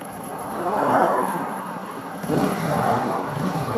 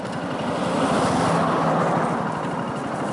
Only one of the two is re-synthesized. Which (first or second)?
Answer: first